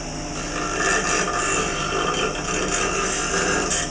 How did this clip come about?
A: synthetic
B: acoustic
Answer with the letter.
B